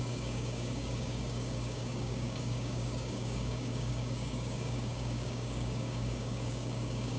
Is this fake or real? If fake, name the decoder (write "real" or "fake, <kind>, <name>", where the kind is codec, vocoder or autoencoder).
fake, codec, DAC